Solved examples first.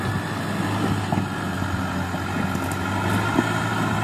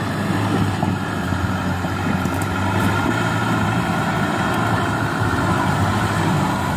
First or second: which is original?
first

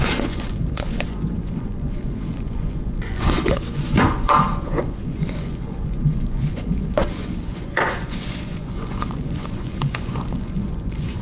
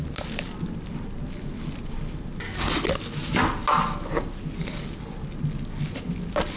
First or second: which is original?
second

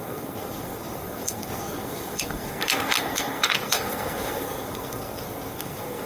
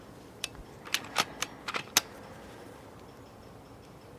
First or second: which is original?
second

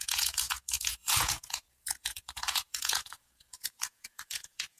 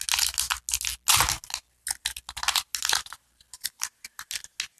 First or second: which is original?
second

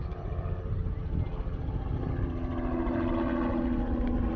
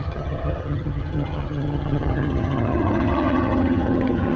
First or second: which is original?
first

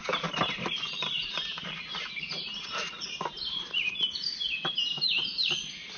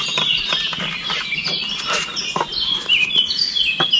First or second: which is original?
second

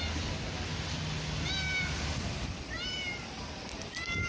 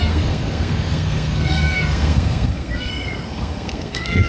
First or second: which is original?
first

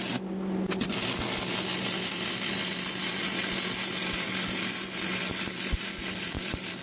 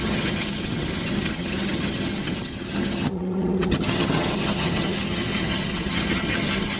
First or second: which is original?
first